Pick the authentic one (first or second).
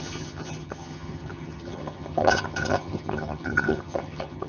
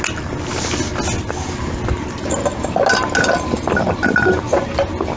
second